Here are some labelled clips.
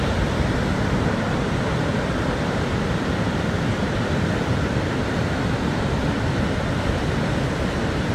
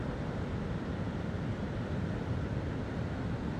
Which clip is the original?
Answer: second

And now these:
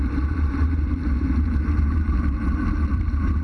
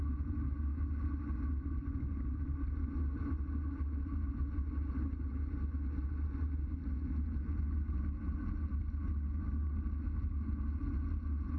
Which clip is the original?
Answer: second